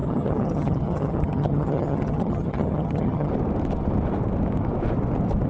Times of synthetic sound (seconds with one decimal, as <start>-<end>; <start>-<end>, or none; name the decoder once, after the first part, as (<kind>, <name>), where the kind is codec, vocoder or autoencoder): 0.0-3.3 (vocoder, HiFi-GAN)